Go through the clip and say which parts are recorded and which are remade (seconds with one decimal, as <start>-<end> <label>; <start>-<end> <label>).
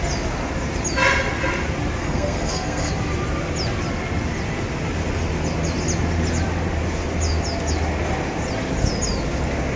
0.0-2.0 recorded; 2.0-2.9 remade; 2.9-9.8 recorded